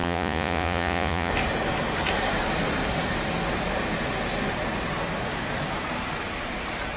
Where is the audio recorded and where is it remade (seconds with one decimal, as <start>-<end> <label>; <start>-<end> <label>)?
0.0-1.3 remade; 1.3-7.0 recorded